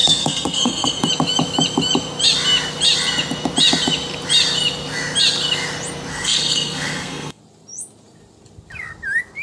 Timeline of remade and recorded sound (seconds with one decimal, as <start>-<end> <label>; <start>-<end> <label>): 0.0-1.1 remade; 1.1-6.1 recorded; 6.1-7.4 remade; 7.4-9.4 recorded